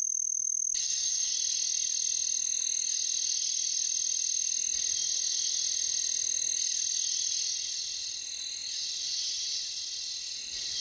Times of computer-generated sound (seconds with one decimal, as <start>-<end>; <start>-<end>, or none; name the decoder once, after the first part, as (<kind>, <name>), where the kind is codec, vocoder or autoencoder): 0.8-1.3 (codec, SNAC)